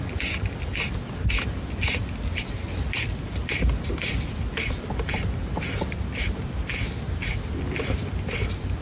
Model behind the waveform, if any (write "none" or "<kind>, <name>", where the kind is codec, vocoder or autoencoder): none